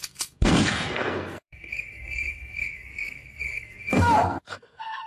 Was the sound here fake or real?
fake